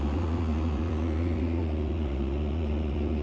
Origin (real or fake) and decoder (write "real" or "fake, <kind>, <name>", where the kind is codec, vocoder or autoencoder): fake, vocoder, Vocos